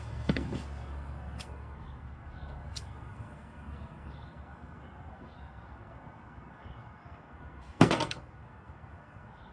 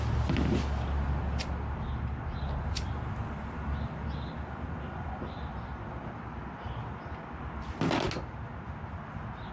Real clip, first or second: second